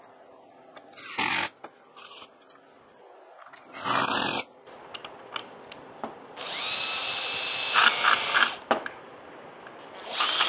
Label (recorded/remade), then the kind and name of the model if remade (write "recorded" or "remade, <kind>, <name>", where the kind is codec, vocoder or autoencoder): recorded